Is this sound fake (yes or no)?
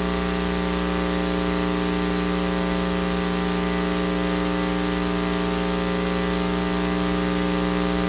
no